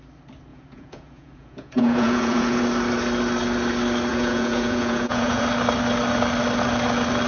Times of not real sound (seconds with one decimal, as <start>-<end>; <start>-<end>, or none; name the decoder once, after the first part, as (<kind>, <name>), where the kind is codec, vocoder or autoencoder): 0.5-2.6 (vocoder, Vocos); 4.1-5.4